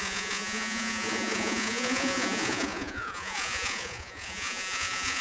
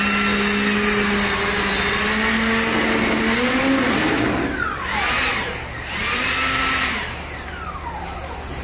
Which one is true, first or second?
second